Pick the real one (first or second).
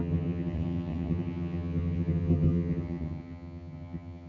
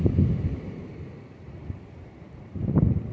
second